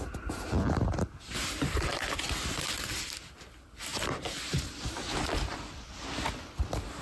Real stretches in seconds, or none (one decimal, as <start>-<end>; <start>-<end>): 0.0-7.0